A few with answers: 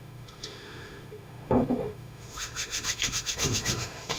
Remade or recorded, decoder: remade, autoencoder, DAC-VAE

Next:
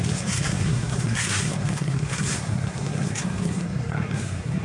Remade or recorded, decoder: remade, codec, SNAC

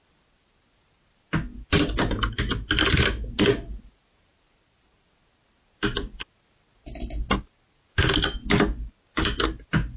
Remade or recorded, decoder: recorded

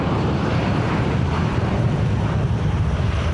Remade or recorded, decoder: remade, vocoder, BigVGAN v2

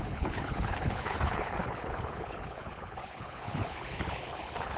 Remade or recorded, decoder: remade, codec, HILCodec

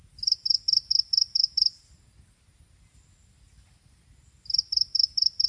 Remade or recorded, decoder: recorded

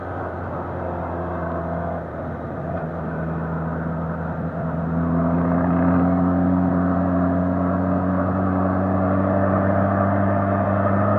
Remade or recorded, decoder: recorded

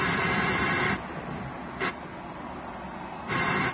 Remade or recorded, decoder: recorded